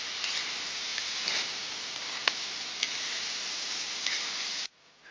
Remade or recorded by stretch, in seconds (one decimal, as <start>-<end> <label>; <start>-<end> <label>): 0.0-5.1 recorded